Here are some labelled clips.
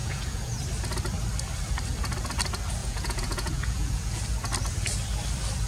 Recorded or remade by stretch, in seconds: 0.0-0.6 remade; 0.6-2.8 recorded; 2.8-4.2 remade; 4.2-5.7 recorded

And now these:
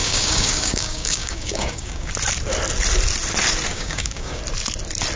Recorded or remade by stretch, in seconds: 0.0-2.1 remade; 2.1-3.7 recorded; 3.7-4.4 remade; 4.4-5.2 recorded

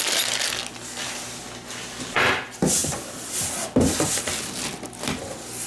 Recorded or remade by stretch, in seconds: 0.0-2.8 recorded; 2.8-4.3 remade; 4.3-5.7 recorded

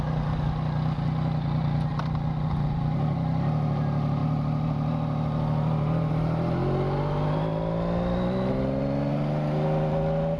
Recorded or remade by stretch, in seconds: 0.0-10.4 recorded